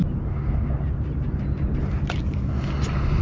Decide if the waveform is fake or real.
real